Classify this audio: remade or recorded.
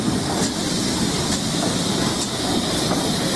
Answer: recorded